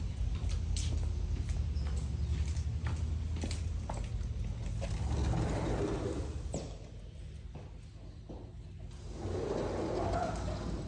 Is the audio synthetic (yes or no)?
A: no